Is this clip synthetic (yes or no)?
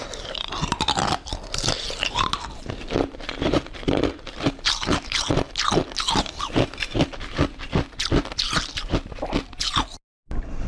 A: no